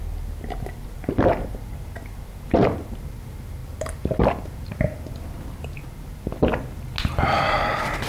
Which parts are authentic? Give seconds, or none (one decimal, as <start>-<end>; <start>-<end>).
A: 0.0-3.6; 5.1-8.1